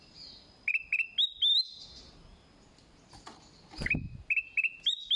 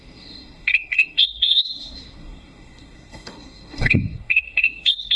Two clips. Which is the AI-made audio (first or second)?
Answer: second